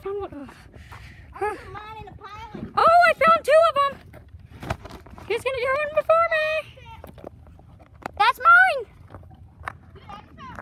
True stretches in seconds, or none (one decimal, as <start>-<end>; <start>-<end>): 0.4-1.5; 2.8-3.6; 5.7-8.2